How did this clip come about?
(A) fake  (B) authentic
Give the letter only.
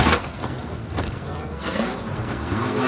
A